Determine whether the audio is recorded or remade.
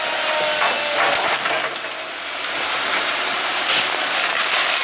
recorded